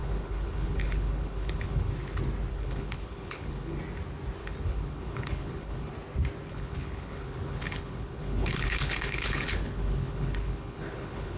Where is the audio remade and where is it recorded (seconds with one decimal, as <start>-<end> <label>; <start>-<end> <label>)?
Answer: 0.0-1.9 remade; 1.9-2.5 recorded; 2.5-3.8 remade; 3.8-4.4 recorded; 4.4-5.9 remade; 5.9-6.5 recorded; 6.5-11.4 remade